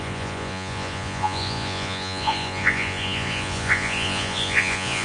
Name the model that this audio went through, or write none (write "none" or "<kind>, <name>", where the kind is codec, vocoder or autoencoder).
vocoder, Vocos